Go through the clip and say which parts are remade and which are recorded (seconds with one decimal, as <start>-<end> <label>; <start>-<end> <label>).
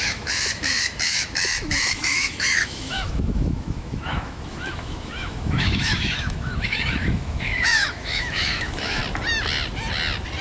0.0-9.0 remade; 9.0-10.4 recorded